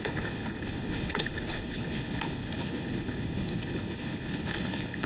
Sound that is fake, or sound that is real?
fake